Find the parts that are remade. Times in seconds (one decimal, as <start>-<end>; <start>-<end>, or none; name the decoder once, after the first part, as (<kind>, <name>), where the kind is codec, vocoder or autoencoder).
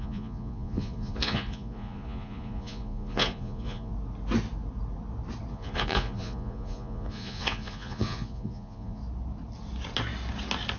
0.0-3.9 (vocoder, Vocos); 5.5-9.0